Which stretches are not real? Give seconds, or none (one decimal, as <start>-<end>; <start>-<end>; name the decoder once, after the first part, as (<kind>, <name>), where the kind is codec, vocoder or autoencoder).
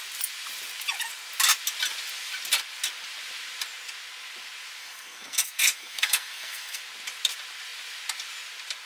4.8-6.8 (codec, SNAC)